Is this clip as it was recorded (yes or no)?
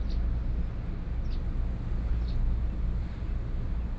yes